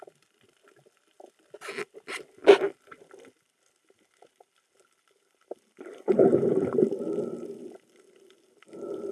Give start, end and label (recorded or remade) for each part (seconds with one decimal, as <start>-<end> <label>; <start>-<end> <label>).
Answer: 0.0-9.1 recorded